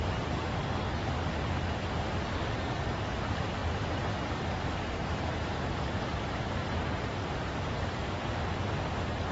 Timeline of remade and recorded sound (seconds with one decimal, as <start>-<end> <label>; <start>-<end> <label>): 0.0-5.4 recorded; 5.4-8.6 remade; 8.6-9.3 recorded